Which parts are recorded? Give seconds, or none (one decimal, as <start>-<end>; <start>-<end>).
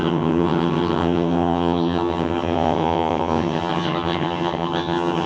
none